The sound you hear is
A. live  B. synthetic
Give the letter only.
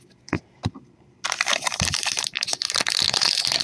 B